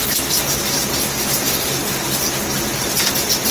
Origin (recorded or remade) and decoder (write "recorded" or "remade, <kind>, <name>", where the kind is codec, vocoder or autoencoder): recorded